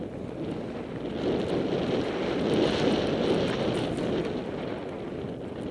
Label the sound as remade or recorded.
recorded